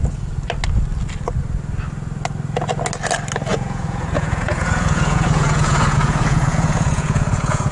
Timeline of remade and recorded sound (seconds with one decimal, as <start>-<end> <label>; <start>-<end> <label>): 0.0-3.5 recorded; 3.5-7.7 remade